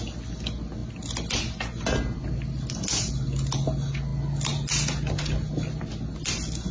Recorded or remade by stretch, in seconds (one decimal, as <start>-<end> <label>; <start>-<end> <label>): 0.0-6.7 recorded